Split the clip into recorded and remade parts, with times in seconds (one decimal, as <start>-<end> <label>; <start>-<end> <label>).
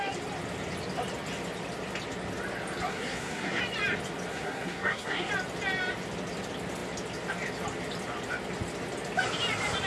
0.0-2.9 recorded; 2.9-3.6 remade; 3.6-4.3 recorded; 4.3-5.3 remade; 5.3-9.9 recorded